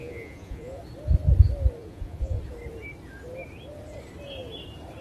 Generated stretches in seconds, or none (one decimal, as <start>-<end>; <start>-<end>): 0.0-0.8; 1.8-2.4